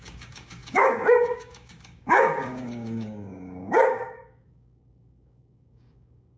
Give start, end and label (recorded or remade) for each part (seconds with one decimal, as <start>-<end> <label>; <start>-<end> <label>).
0.0-6.4 remade